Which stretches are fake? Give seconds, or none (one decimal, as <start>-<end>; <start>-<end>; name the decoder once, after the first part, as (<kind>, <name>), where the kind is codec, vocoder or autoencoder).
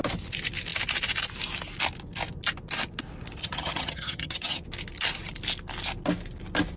3.4-4.6 (vocoder, HiFi-GAN)